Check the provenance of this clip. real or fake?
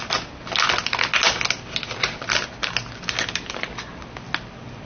real